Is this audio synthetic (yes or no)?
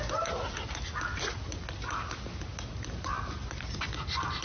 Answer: no